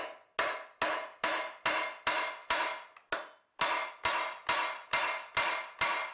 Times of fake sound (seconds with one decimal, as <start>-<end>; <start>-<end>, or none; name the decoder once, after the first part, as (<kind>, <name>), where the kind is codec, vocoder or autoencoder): none